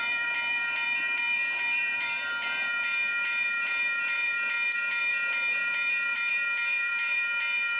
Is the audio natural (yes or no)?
no